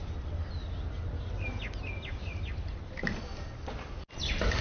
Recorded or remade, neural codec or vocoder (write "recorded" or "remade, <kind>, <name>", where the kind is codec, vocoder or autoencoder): recorded